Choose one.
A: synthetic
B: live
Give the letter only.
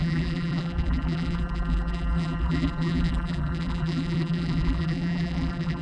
A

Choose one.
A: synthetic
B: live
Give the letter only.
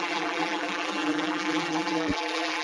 A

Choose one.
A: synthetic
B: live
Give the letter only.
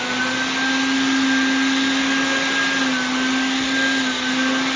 B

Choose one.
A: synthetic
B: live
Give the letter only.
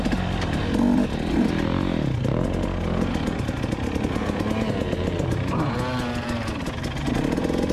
B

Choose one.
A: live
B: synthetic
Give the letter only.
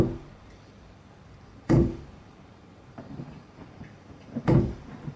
B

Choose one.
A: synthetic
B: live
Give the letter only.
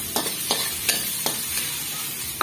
B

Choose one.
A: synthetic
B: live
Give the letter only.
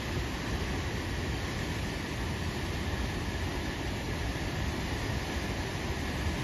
B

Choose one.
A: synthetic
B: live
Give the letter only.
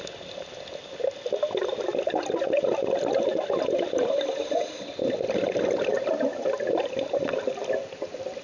B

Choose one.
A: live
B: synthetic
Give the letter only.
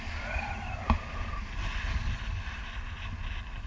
A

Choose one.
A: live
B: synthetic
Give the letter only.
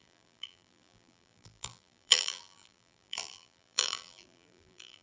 B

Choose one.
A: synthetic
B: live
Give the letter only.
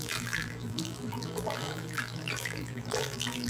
A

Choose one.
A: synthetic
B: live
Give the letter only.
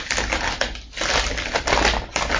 A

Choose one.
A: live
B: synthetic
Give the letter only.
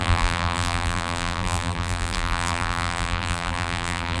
B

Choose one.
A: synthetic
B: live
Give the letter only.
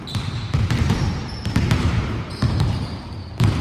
A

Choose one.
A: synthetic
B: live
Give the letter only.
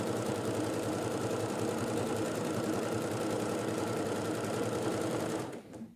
A